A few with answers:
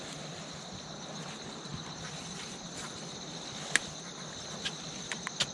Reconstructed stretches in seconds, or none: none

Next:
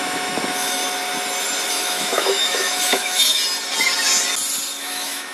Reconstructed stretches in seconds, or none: 0.0-0.8 (autoencoder, DAC-VAE); 1.7-3.4; 4.8-5.3